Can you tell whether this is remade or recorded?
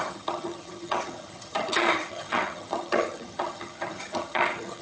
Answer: remade